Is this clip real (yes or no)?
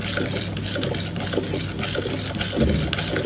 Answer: yes